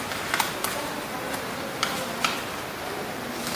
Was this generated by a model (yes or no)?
no